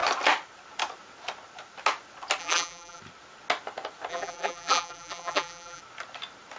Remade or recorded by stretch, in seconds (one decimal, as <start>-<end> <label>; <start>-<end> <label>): 0.0-2.4 recorded; 2.4-3.0 remade; 3.0-4.1 recorded; 4.1-5.8 remade; 5.8-6.6 recorded